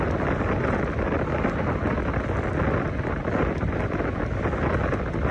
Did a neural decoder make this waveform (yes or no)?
no